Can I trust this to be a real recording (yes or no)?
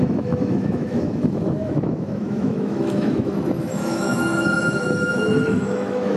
no